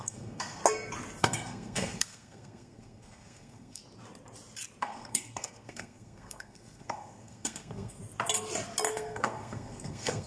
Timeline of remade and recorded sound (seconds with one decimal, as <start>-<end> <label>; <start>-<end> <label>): 0.0-0.6 remade; 0.6-1.2 recorded; 1.2-3.8 remade; 3.8-4.8 recorded; 4.8-8.0 remade; 8.0-8.9 recorded; 8.9-10.3 remade